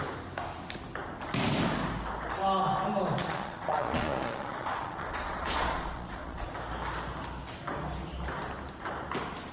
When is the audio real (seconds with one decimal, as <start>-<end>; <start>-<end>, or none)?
0.0-3.2; 6.5-9.5